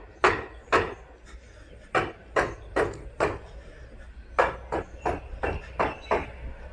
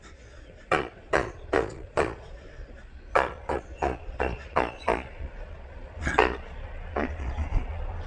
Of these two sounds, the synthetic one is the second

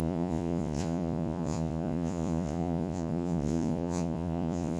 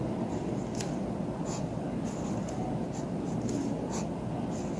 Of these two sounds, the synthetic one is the first